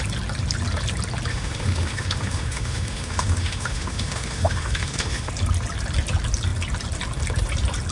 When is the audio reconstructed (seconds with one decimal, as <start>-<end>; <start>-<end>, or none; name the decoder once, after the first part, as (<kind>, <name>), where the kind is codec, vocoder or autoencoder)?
1.3-5.3 (autoencoder, DAC-VAE)